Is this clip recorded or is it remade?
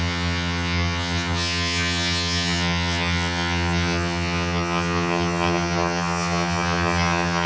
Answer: remade